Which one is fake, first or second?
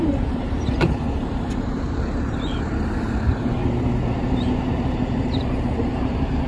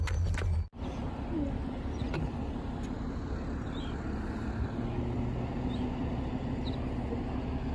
first